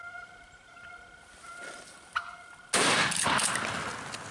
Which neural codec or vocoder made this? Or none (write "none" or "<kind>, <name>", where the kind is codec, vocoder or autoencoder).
none